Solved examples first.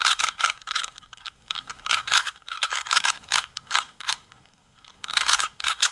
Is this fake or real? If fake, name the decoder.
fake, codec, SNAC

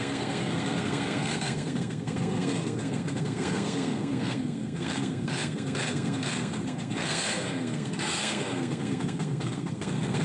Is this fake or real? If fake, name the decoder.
fake, codec, SNAC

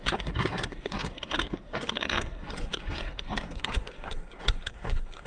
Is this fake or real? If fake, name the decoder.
fake, codec, SNAC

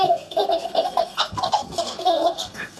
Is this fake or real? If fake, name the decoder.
fake, codec, SNAC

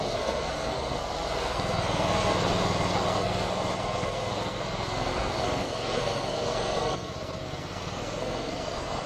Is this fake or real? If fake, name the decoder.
fake, codec, SNAC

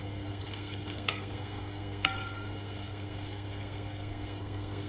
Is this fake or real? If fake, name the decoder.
fake, codec, SNAC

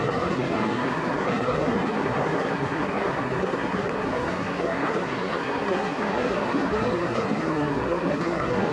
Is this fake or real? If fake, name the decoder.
fake, codec, SNAC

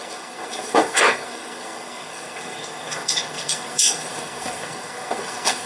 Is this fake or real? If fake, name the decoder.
fake, codec, SNAC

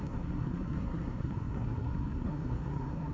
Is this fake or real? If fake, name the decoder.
fake, codec, SNAC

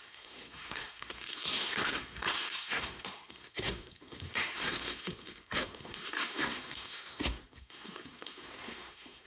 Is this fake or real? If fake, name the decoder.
fake, codec, SNAC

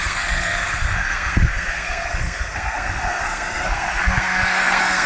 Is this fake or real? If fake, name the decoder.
fake, codec, SNAC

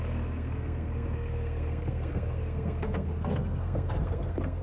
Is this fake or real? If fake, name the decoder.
fake, codec, SNAC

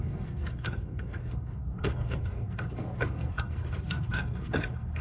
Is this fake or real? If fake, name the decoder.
fake, codec, SNAC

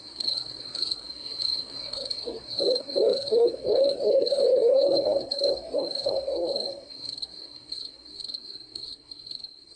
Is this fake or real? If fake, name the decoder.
fake, codec, SNAC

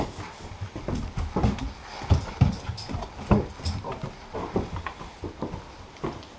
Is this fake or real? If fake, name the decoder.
real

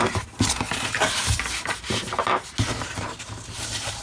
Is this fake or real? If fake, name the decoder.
real